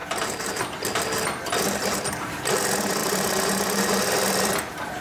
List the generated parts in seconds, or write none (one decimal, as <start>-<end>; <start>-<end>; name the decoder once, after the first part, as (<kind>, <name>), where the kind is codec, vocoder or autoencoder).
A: 0.0-0.8 (vocoder, BigVGAN v2); 3.0-3.9